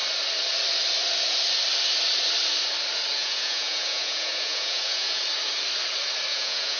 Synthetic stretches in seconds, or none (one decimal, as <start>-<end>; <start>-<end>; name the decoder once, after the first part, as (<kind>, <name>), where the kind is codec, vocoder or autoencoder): 3.2-5.2 (vocoder, Vocos); 6.3-6.8